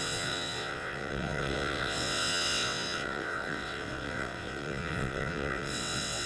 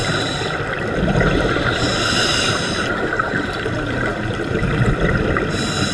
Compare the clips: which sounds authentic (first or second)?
second